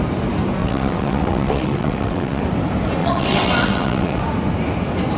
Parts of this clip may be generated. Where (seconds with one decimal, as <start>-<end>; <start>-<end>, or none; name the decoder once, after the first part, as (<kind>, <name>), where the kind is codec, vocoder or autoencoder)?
0.6-2.4 (vocoder, WaveNeXt); 3.0-4.2